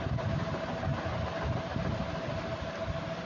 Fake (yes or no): no